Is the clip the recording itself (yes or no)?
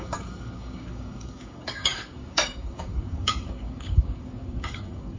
no